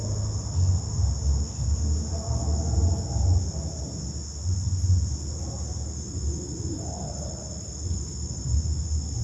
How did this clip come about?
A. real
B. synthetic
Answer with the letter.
A